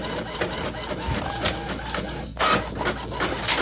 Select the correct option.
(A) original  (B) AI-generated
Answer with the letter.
A